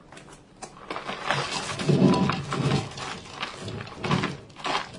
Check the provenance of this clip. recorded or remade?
recorded